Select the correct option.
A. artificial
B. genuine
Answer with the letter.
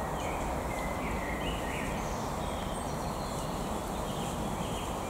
B